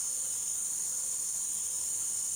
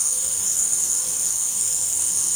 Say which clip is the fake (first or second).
second